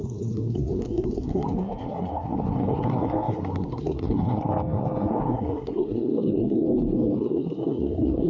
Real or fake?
fake